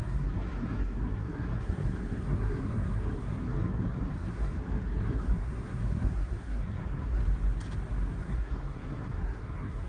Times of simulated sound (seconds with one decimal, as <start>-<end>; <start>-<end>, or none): 0.0-7.2; 8.2-9.9